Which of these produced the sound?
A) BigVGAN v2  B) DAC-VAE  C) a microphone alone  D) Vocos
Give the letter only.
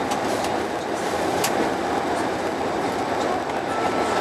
C